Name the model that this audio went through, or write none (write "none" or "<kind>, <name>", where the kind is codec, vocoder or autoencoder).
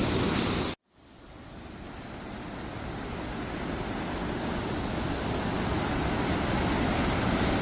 none